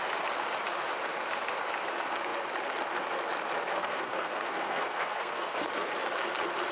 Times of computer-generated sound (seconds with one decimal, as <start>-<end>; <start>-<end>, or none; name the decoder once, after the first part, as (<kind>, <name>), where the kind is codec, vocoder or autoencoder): 3.7-5.6 (codec, SNAC)